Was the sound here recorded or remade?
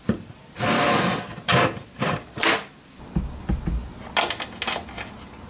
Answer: recorded